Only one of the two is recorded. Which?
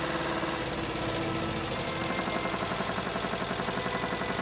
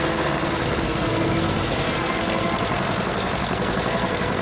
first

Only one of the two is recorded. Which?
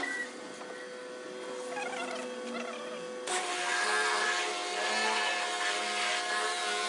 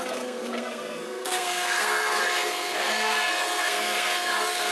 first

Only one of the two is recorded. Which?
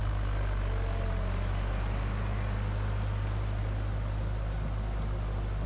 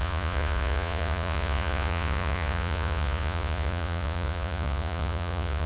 first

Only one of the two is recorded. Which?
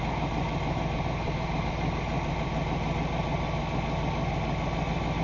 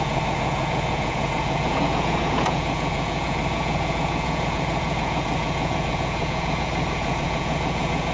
first